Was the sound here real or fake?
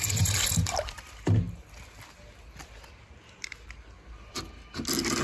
real